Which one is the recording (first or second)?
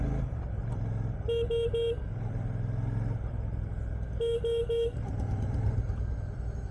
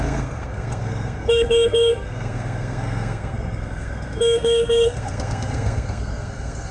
first